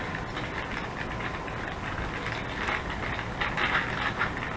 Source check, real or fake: real